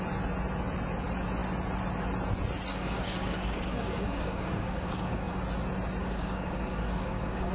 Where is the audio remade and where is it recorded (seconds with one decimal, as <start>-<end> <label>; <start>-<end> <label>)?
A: 0.0-2.7 recorded; 2.7-5.3 remade; 5.3-6.0 recorded; 6.0-7.5 remade